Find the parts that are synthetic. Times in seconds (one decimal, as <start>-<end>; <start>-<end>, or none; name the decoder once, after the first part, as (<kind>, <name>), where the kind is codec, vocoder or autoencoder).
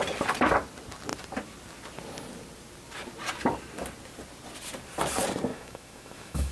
5.5-6.5 (autoencoder, DAC-VAE)